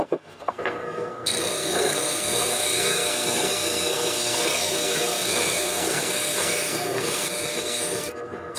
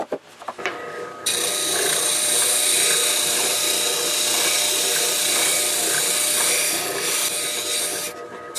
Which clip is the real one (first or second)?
second